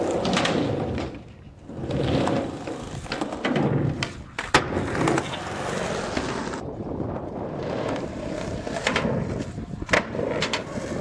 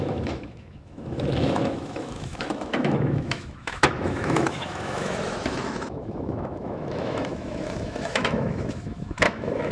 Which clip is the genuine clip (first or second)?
first